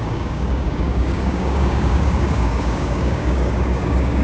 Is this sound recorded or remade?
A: remade